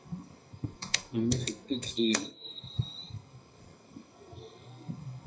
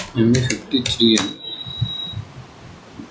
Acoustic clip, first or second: second